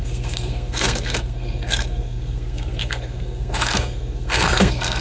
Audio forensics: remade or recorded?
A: remade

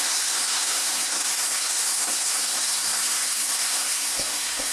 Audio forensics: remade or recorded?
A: remade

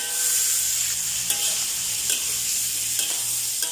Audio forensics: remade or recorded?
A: recorded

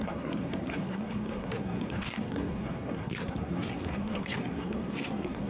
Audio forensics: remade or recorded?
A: remade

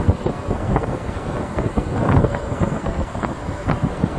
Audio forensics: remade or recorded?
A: remade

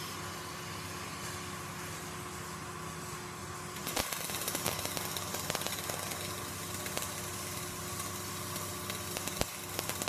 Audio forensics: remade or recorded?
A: recorded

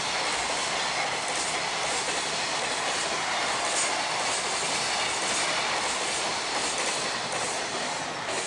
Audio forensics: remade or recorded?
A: recorded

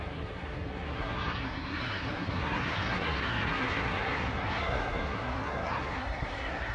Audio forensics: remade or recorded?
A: remade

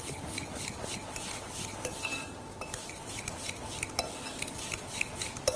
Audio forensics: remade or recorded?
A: recorded